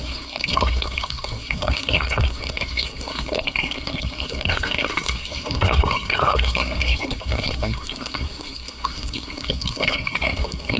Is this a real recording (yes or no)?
no